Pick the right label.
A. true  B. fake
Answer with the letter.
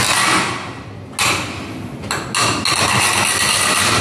A